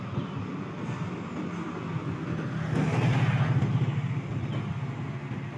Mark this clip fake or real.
real